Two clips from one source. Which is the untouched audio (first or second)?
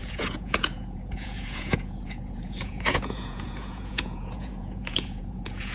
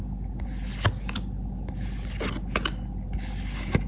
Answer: second